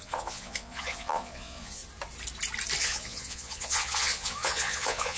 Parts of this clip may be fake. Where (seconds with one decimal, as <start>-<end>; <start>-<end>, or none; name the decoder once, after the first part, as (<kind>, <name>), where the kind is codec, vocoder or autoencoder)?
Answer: 0.0-1.8 (vocoder, Vocos); 2.8-5.2